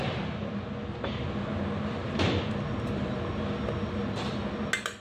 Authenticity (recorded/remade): recorded